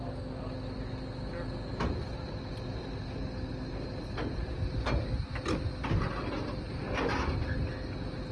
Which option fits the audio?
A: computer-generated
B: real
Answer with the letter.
B